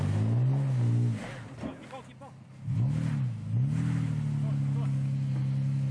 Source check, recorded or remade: recorded